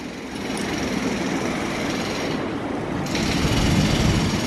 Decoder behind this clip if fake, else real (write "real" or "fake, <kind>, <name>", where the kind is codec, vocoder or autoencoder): real